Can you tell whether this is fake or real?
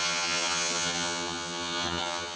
fake